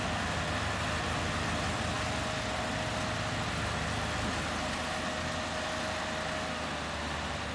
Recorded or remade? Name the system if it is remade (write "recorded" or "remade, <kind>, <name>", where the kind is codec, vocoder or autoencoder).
recorded